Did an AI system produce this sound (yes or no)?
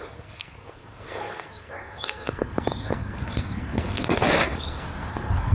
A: yes